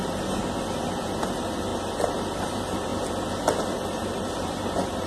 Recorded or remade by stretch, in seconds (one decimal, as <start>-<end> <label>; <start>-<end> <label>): 0.0-0.4 remade; 0.4-1.2 recorded; 1.2-1.7 remade; 1.7-2.4 recorded; 2.4-2.9 remade; 2.9-3.6 recorded; 3.6-5.1 remade